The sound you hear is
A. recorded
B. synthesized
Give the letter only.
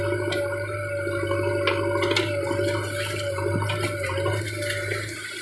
A